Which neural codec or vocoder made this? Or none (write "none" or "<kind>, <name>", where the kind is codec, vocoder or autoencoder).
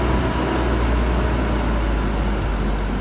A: none